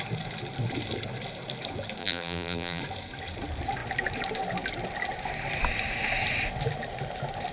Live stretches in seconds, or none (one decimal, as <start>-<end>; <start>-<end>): 0.0-2.0; 2.8-7.5